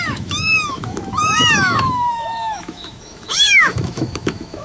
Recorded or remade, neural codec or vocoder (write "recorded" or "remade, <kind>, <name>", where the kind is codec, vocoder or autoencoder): remade, autoencoder, DAC-VAE